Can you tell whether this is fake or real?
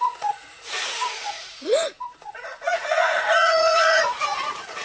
fake